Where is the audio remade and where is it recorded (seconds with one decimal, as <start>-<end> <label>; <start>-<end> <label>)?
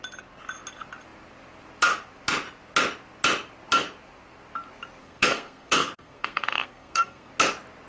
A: 0.0-5.0 recorded; 5.0-7.3 remade; 7.3-7.9 recorded